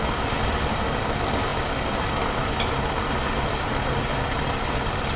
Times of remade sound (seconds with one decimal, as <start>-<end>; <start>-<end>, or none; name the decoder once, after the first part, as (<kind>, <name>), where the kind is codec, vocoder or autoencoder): none